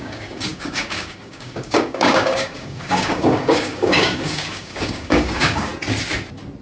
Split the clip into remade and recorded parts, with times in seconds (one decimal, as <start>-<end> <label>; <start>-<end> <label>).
0.0-5.7 remade; 5.7-6.6 recorded